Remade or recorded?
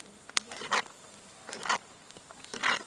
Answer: recorded